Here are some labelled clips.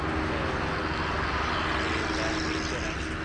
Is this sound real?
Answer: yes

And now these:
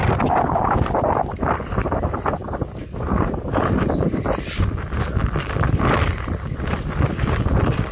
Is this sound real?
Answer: yes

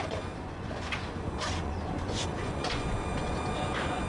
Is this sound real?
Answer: no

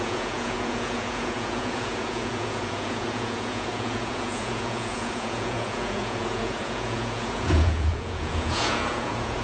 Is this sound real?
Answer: no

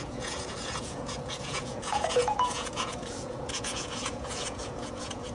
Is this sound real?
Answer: no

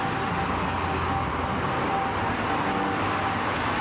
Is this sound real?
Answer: yes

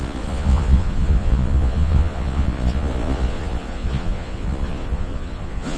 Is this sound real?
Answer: no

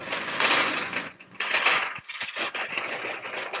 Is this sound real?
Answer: no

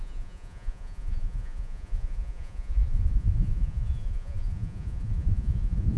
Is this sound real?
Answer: no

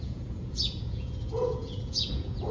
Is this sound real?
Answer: no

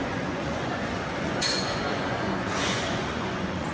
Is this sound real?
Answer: no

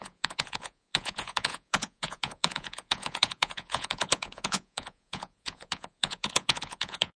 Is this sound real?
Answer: no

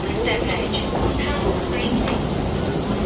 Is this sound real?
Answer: yes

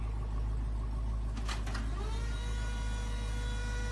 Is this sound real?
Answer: yes